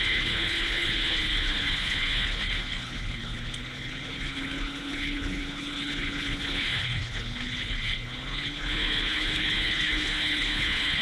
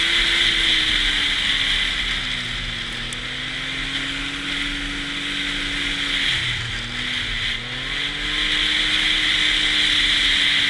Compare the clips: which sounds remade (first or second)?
first